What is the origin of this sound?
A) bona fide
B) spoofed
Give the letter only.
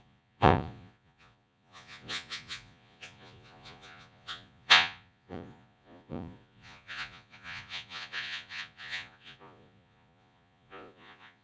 B